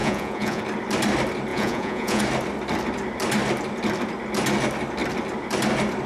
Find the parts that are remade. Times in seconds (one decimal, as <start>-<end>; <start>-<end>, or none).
0.0-0.6; 1.5-2.2